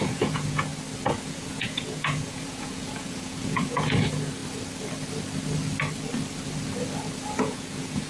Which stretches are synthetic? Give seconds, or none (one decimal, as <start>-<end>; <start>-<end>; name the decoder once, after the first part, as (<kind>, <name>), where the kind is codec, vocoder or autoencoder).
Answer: 0.0-0.7 (vocoder, Vocos); 1.3-4.4; 7.4-8.1

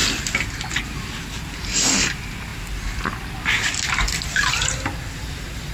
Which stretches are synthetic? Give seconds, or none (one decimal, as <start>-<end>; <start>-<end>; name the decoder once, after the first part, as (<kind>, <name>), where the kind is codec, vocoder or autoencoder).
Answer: none

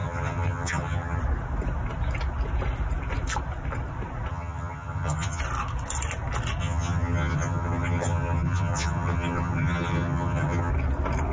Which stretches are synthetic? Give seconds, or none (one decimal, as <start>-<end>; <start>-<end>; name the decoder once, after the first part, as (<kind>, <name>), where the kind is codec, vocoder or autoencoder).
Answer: 0.0-1.2 (vocoder, HiFi-GAN); 4.3-5.4; 6.6-10.7

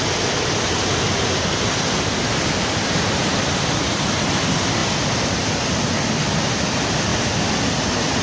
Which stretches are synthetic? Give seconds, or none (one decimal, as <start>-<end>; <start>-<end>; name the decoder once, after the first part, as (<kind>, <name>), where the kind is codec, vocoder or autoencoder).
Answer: none